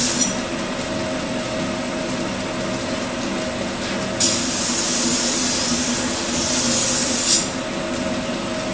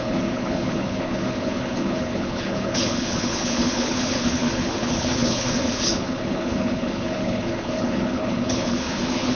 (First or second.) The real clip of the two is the first